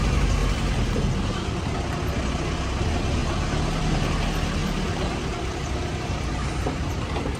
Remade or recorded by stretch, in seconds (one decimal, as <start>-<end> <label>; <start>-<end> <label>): 0.0-0.4 recorded; 0.4-1.0 remade; 1.0-3.2 recorded; 3.2-3.8 remade; 3.8-4.6 recorded; 4.6-7.4 remade